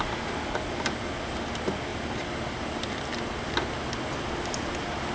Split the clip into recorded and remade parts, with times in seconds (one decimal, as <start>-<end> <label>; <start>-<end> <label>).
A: 0.0-5.1 recorded